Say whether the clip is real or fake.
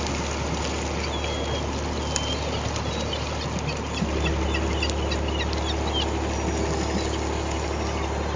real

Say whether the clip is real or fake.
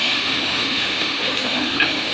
fake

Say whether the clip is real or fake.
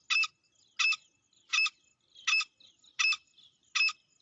real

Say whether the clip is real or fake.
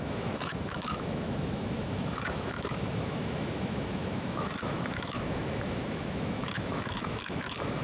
fake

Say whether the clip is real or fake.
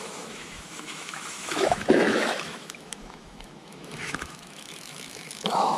fake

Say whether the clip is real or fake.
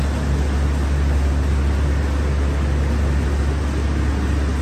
real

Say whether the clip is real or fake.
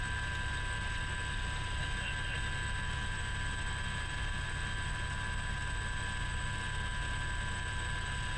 real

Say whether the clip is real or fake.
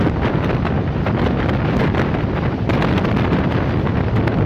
real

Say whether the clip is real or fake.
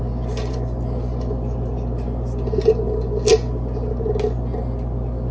real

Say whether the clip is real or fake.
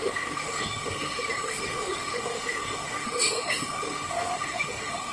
fake